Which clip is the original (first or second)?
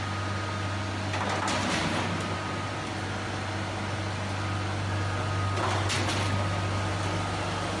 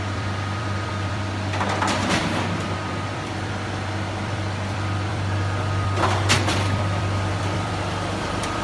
first